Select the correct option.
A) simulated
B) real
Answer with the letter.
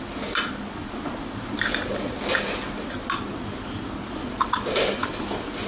B